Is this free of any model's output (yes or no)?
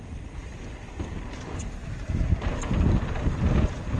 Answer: yes